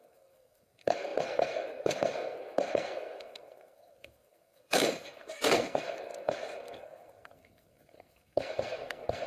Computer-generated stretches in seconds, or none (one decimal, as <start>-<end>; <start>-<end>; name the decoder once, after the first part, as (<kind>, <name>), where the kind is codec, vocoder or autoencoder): 0.0-9.3 (codec, SNAC)

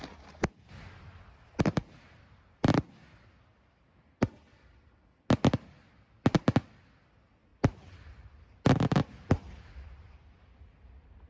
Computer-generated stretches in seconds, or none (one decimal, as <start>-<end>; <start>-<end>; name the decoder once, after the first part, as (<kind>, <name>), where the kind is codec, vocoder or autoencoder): none

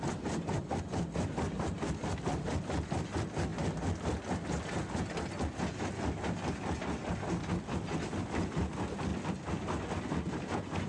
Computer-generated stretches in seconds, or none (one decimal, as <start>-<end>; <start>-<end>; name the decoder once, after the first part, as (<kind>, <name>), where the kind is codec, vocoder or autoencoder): none